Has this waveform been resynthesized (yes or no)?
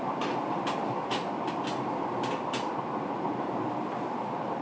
no